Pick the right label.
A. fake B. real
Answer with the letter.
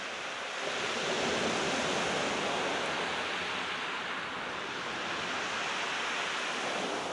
B